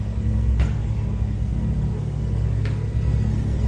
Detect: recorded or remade remade